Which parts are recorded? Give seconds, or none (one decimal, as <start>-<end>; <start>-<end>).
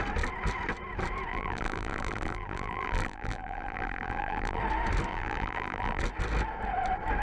0.0-1.3; 4.6-5.1; 6.0-7.2